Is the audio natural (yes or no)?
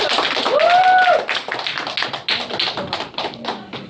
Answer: yes